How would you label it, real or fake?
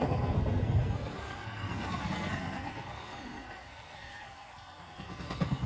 fake